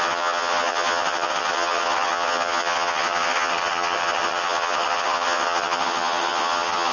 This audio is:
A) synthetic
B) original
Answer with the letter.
A